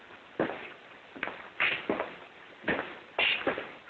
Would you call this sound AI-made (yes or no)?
no